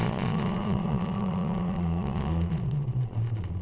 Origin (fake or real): fake